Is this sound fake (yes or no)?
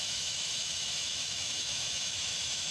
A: yes